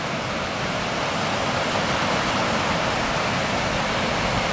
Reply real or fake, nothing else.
real